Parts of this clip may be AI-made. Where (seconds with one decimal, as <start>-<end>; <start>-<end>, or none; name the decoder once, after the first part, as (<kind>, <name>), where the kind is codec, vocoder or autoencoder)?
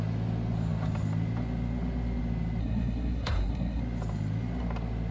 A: 2.6-3.8 (codec, SNAC)